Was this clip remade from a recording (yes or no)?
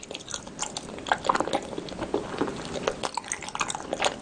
no